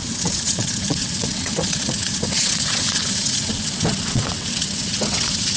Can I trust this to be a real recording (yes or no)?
no